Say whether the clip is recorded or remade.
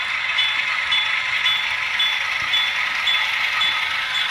recorded